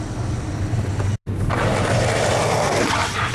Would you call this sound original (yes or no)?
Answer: yes